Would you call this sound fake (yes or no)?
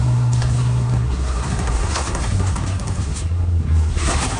yes